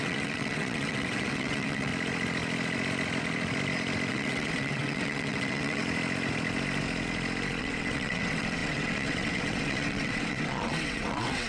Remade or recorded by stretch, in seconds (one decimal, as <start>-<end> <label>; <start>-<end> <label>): 0.0-1.9 remade; 1.9-4.1 recorded; 4.1-5.8 remade; 5.8-7.6 recorded; 7.6-11.5 remade